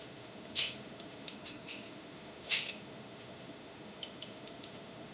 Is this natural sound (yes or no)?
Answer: no